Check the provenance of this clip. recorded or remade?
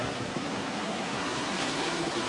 remade